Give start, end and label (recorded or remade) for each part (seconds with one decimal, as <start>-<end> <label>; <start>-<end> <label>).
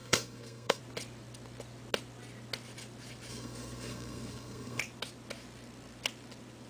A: 0.0-0.8 remade; 0.8-3.3 recorded; 3.3-4.8 remade; 4.8-6.7 recorded